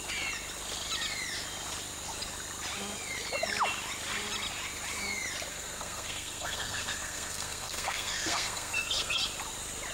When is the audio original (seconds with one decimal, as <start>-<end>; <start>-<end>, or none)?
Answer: 0.0-5.5; 9.2-9.9